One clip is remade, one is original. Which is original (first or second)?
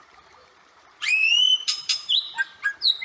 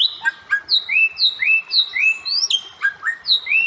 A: second